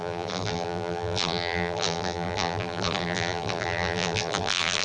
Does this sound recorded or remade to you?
remade